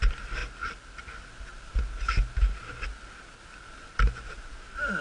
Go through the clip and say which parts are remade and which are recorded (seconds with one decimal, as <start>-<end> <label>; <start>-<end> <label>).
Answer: 0.0-5.0 recorded